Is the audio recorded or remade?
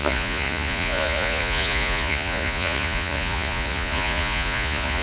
remade